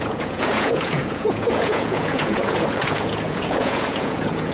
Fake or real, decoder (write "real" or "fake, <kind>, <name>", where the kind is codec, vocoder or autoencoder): fake, vocoder, Vocos